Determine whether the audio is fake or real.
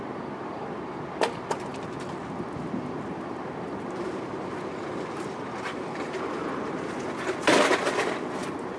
real